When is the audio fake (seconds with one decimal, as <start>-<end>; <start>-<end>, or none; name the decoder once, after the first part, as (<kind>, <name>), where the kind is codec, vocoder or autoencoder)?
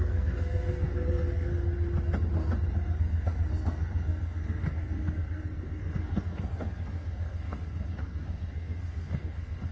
0.0-1.5 (codec, SNAC); 3.0-9.7